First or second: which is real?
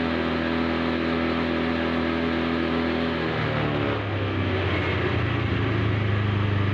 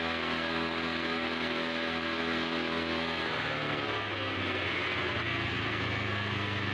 first